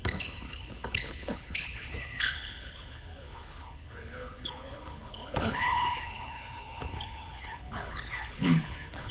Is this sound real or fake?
fake